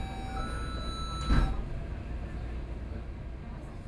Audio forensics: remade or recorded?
recorded